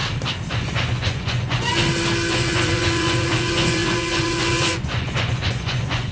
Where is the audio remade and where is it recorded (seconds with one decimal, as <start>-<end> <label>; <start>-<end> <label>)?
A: 0.0-0.5 recorded; 0.5-1.8 remade; 1.8-2.3 recorded; 2.3-6.1 remade